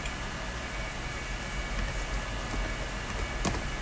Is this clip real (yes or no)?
yes